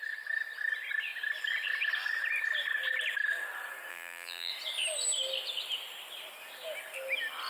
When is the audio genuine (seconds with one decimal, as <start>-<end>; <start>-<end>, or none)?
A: 0.0-3.9; 4.5-7.5